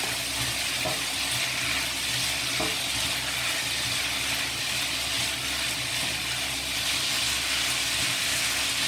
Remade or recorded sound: recorded